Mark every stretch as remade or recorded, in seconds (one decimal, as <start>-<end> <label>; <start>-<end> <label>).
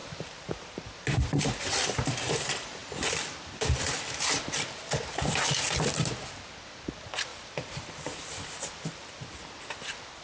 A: 0.0-1.6 remade; 1.6-2.8 recorded; 2.8-3.8 remade; 3.8-7.3 recorded; 7.3-8.6 remade; 8.6-10.2 recorded